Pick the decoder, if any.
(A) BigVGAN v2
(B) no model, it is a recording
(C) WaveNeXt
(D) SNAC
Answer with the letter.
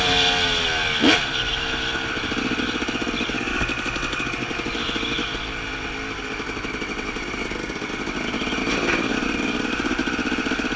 B